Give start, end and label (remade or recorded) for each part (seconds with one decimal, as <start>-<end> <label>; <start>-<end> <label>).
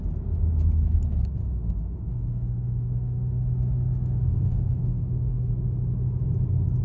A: 0.0-1.4 recorded; 1.4-5.5 remade; 5.5-6.8 recorded